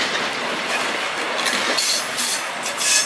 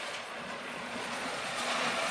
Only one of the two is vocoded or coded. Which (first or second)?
second